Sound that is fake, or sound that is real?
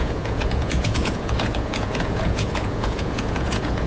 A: fake